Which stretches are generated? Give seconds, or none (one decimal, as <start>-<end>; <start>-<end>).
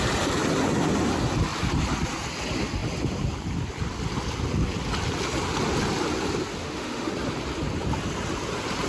6.6-7.1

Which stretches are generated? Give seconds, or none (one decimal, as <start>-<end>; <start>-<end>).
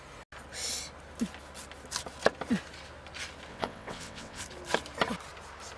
3.5-4.4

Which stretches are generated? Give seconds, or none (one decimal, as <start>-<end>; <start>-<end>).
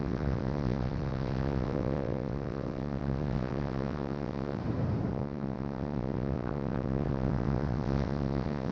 0.0-4.6; 5.1-8.7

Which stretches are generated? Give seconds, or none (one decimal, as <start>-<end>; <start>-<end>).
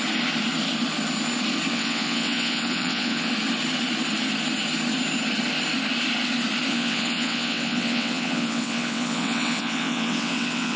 1.7-3.3; 6.7-10.8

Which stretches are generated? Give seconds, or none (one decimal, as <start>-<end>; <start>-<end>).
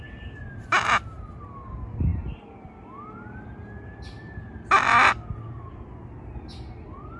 none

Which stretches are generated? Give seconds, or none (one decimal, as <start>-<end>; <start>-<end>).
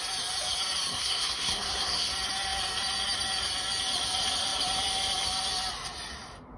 0.9-2.1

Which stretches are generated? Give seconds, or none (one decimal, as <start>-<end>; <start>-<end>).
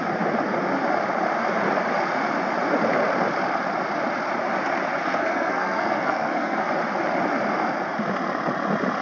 5.0-6.7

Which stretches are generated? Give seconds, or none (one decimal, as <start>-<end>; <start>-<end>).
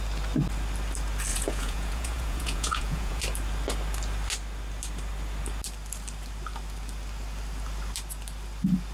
1.3-3.2